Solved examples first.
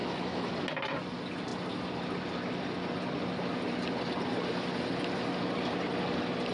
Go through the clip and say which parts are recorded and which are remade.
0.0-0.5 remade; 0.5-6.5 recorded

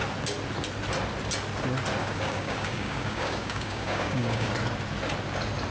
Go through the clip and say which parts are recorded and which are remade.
0.0-2.0 recorded; 2.0-4.5 remade; 4.5-5.7 recorded

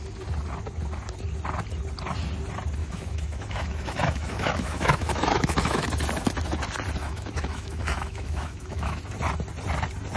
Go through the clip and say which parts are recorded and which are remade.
0.0-2.8 recorded; 2.8-5.9 remade; 5.9-7.0 recorded; 7.0-9.0 remade; 9.0-10.2 recorded

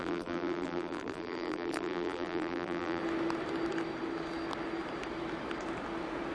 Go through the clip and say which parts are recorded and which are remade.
0.0-3.0 remade; 3.0-6.3 recorded

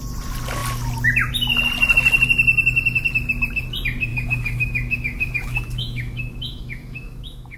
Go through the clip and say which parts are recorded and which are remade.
0.0-4.1 recorded; 4.1-7.6 remade